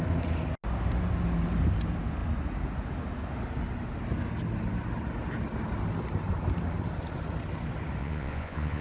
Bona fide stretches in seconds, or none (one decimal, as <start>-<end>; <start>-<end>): 0.0-8.0